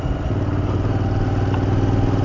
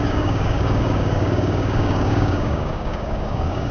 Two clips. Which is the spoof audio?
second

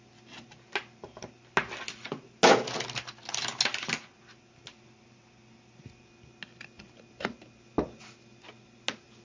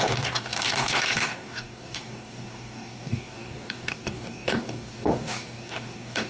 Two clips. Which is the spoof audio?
second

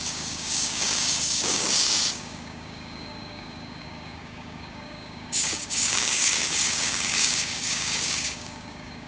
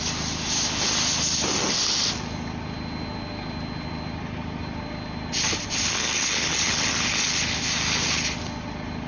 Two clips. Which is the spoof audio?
first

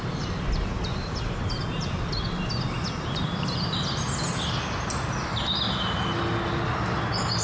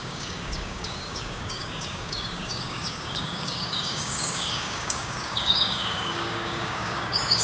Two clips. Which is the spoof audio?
second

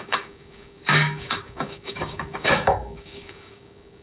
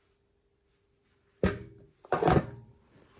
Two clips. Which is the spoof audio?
first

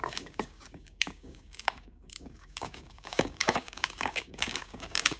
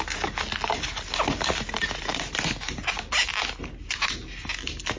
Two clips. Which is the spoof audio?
first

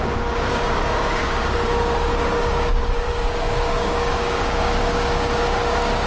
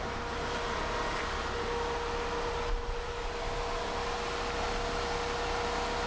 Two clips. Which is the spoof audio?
first